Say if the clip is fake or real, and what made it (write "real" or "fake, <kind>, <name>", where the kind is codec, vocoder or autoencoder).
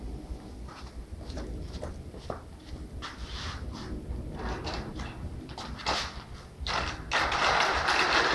real